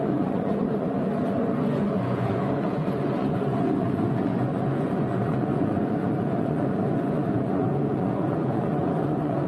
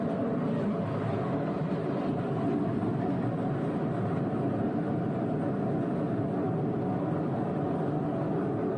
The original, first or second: second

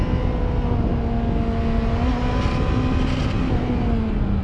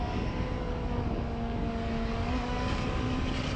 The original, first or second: first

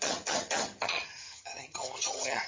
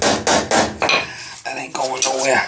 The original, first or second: second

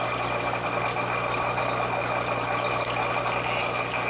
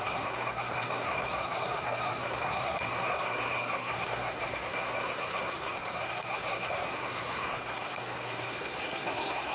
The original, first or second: first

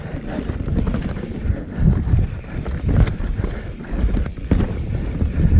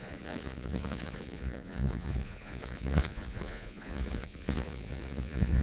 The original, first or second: first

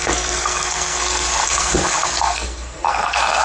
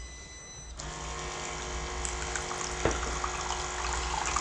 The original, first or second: second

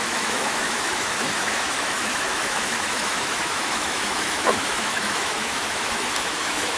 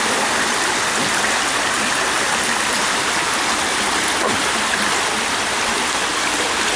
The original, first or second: second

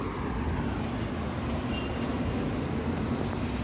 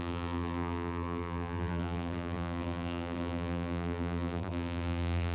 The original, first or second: first